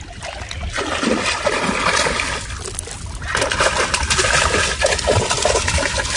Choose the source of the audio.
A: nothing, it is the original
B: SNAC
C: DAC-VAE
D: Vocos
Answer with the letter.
A